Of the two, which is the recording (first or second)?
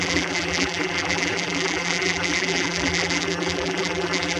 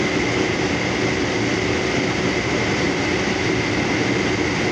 second